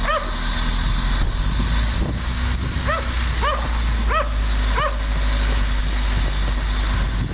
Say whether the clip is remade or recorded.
recorded